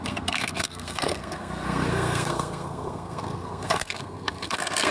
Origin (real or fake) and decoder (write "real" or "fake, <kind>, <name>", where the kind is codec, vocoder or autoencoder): fake, codec, SNAC